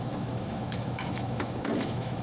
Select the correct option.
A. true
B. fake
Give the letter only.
B